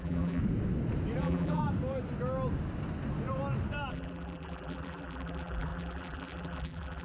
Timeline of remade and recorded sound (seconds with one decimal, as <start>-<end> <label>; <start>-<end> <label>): 0.0-0.4 remade; 0.4-1.2 recorded; 1.2-1.6 remade; 1.6-3.9 recorded; 3.9-7.0 remade